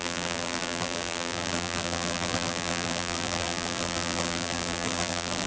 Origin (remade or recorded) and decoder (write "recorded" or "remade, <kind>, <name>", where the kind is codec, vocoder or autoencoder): remade, vocoder, BigVGAN v2